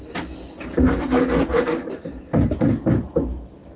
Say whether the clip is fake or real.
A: real